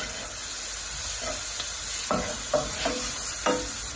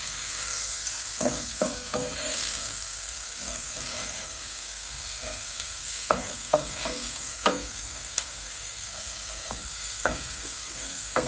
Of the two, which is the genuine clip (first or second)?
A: first